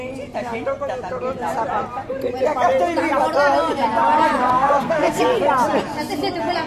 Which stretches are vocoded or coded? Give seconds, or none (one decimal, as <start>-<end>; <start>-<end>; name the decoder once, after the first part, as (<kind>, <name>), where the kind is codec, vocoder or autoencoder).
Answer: 4.4-5.2 (codec, SNAC)